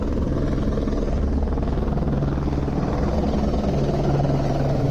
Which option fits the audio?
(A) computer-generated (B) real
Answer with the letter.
B